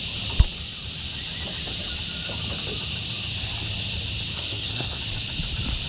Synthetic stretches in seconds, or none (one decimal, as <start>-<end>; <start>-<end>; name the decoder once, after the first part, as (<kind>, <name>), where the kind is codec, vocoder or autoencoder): 4.3-5.0 (codec, SNAC)